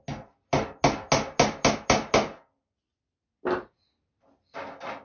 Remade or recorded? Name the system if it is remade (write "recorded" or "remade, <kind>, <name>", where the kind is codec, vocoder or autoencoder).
recorded